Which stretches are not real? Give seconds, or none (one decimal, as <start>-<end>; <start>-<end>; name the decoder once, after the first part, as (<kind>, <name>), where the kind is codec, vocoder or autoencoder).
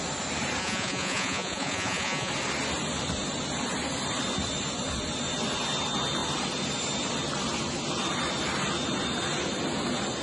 0.6-2.3 (vocoder, Vocos)